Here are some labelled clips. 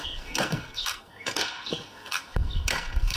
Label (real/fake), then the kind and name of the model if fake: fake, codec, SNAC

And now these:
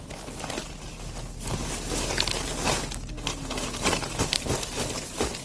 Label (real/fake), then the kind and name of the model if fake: real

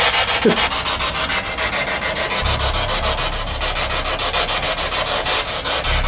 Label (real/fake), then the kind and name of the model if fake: real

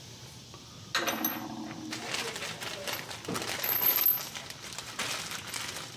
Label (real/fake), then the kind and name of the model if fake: real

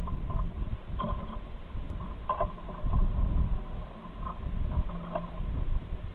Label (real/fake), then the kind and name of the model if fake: real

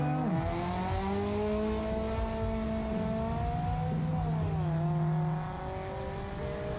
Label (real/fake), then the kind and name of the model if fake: real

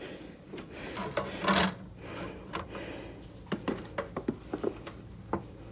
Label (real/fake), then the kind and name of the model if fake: real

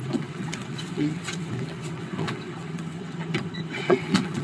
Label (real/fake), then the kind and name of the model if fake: fake, vocoder, WaveNeXt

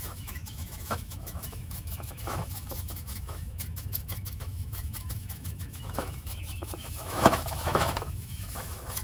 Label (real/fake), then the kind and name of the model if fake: fake, autoencoder, DAC-VAE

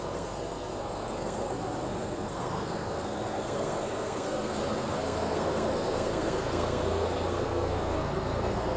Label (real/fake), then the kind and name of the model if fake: fake, codec, SNAC